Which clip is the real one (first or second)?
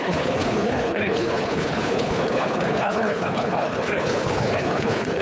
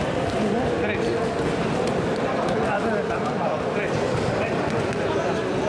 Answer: second